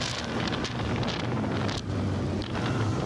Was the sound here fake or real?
real